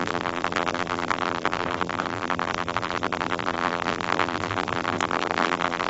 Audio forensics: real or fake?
fake